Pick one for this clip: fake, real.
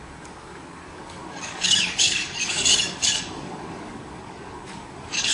fake